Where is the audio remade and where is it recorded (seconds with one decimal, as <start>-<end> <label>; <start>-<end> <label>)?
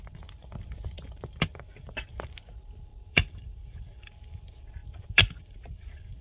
0.0-1.5 recorded; 1.5-2.0 remade; 2.0-2.9 recorded; 2.9-4.0 remade; 4.0-6.2 recorded